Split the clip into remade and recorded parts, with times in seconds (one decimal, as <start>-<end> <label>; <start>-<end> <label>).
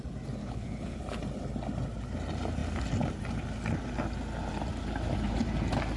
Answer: 0.0-0.4 recorded; 0.4-1.0 remade; 1.0-6.0 recorded